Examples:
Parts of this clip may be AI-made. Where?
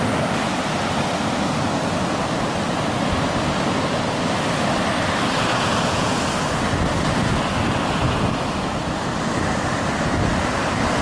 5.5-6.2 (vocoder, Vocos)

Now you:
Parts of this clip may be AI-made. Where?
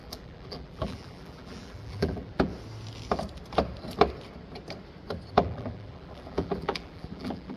0.0-2.5 (vocoder, BigVGAN v2); 5.3-7.6